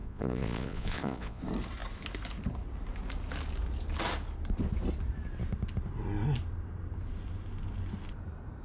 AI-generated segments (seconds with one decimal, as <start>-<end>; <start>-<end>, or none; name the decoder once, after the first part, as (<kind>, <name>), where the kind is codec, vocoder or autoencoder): 0.0-1.4 (vocoder, Vocos)